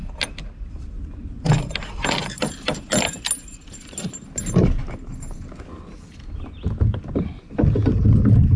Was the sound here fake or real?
real